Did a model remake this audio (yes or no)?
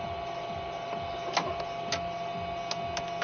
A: no